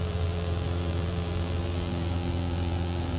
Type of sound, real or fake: fake